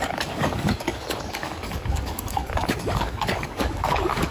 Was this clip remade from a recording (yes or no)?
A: yes